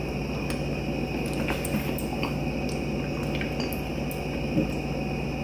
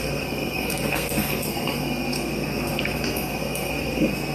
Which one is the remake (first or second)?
second